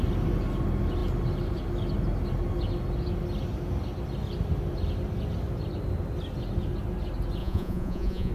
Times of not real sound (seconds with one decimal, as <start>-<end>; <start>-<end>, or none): 7.4-8.3